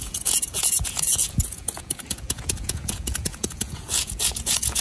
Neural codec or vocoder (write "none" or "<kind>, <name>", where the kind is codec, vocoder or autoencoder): vocoder, Vocos